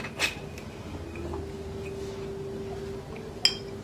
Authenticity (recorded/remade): recorded